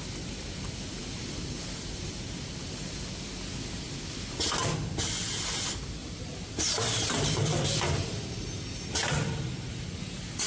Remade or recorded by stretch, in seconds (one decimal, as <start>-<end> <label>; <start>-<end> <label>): 0.0-6.0 recorded; 6.0-7.8 remade; 7.8-10.5 recorded